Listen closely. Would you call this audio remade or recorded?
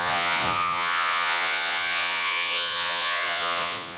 remade